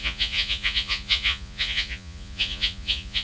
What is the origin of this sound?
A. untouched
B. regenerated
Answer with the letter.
B